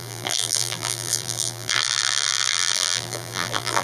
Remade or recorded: remade